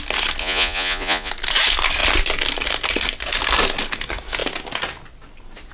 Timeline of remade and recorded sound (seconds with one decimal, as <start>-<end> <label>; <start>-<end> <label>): 0.0-0.4 recorded; 0.4-1.3 remade; 1.3-5.7 recorded